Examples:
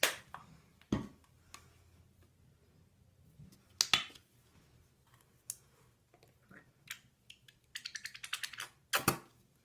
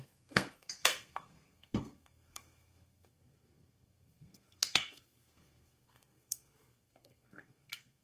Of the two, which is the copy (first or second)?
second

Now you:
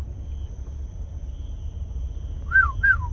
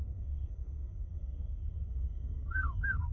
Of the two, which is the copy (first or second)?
second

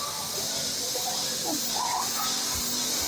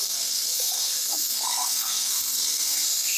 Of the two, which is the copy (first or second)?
second